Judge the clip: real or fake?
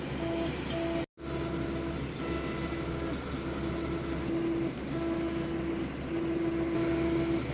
real